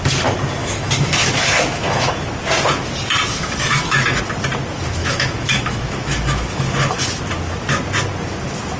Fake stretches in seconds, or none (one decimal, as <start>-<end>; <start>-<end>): 0.6-2.1; 3.3-4.2; 5.0-7.1